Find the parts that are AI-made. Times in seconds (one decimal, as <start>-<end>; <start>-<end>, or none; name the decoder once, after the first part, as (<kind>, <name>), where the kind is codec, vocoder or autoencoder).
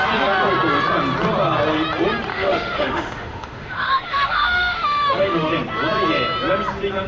2.3-5.5 (autoencoder, DAC-VAE)